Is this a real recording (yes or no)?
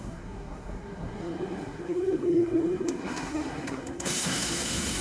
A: no